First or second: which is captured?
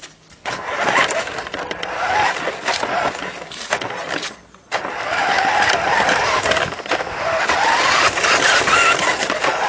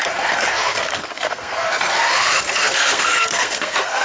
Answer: first